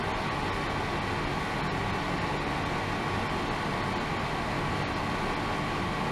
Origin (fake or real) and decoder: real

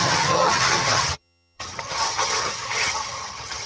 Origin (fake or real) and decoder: fake, vocoder, HiFi-GAN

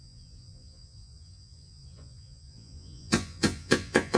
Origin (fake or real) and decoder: fake, vocoder, Vocos